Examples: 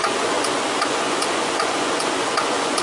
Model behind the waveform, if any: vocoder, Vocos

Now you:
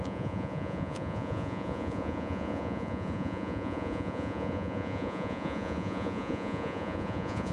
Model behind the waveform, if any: vocoder, Vocos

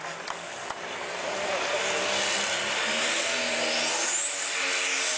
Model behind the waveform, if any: none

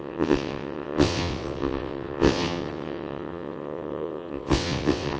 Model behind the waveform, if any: vocoder, WaveNeXt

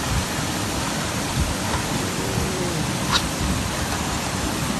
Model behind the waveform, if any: vocoder, BigVGAN v2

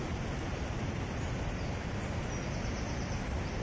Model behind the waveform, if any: none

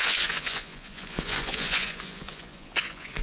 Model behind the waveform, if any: vocoder, Vocos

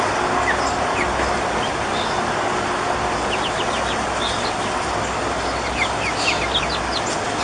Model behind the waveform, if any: none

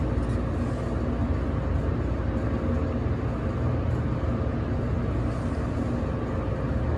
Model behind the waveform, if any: none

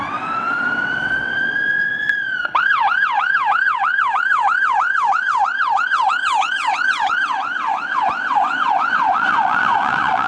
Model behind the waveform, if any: vocoder, WaveNeXt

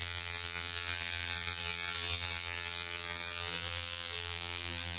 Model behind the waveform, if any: vocoder, BigVGAN v2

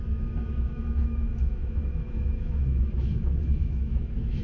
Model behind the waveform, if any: autoencoder, DAC-VAE